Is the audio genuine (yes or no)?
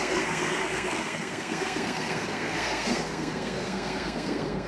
no